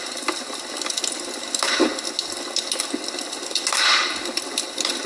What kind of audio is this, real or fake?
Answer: real